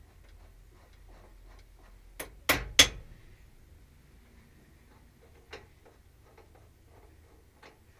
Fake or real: real